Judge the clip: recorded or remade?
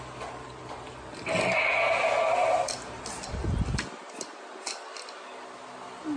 recorded